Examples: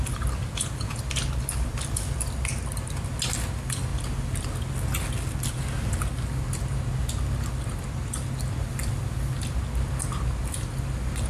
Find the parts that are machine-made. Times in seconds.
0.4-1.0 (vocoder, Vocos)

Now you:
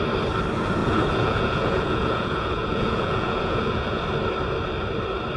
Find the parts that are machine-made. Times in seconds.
0.8-4.0 (vocoder, Vocos)

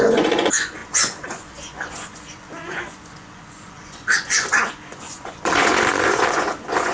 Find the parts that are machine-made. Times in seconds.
0.0-6.9 (vocoder, Vocos)

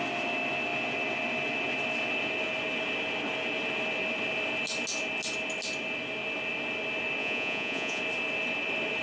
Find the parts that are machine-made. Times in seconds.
7.2-8.0 (vocoder, Vocos)

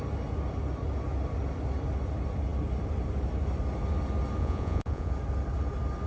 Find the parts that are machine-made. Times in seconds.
4.4-5.1 (vocoder, Vocos)

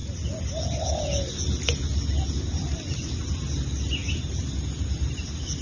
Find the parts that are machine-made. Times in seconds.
none